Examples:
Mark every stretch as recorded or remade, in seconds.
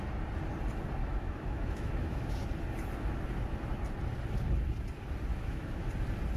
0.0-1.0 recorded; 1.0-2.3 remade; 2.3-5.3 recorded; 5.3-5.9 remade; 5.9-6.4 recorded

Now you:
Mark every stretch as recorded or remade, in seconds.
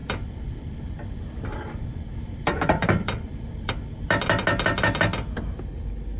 0.0-3.7 remade; 3.7-6.2 recorded